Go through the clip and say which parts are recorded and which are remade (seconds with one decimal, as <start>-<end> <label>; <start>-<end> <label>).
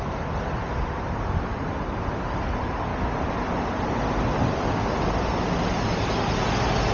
0.0-6.9 recorded